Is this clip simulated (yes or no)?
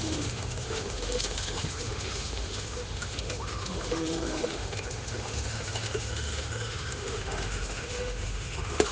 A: yes